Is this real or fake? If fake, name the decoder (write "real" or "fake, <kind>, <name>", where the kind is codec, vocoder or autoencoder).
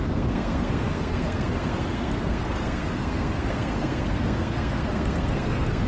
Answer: fake, codec, SNAC